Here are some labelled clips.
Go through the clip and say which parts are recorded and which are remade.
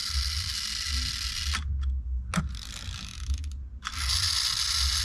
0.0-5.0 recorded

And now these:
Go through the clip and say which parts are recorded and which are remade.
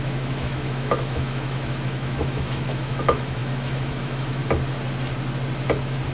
0.0-4.4 remade; 4.4-6.1 recorded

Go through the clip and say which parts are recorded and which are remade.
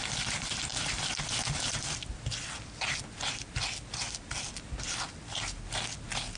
0.0-6.4 recorded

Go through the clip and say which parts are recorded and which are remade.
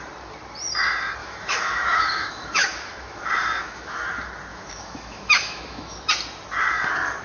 0.0-1.2 recorded; 1.2-3.2 remade; 3.2-3.6 recorded; 3.6-4.1 remade; 4.1-4.5 recorded; 4.5-6.1 remade; 6.1-7.2 recorded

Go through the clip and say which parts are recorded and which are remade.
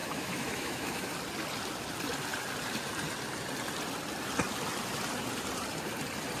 0.0-1.1 remade; 1.1-6.4 recorded